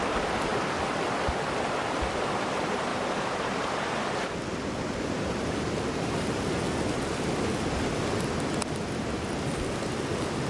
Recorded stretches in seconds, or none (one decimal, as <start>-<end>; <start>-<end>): 0.0-2.9; 3.7-4.5; 6.4-10.5

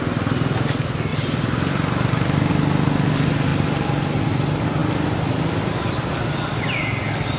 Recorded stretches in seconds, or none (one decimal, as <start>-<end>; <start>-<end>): 0.0-1.1; 2.5-3.5; 4.0-7.4

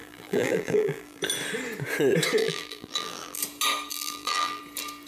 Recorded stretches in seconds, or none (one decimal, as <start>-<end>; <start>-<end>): 1.2-2.4; 3.4-3.9; 4.6-5.1

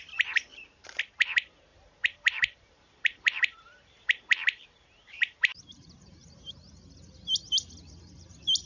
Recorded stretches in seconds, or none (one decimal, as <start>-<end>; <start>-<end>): 0.0-0.5; 1.0-1.7; 6.5-8.7

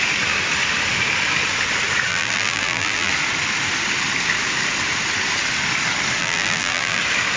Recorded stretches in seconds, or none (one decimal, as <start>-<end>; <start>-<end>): 0.0-2.1; 3.1-6.2; 7.0-7.4

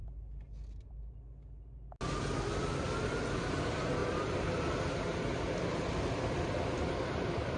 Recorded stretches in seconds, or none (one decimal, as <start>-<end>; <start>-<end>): 0.0-3.1